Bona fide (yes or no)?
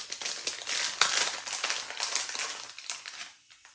yes